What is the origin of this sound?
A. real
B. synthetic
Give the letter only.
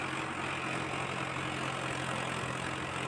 A